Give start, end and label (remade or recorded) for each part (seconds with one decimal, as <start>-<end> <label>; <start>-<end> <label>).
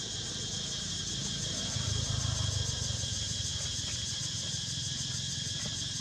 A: 0.0-6.0 recorded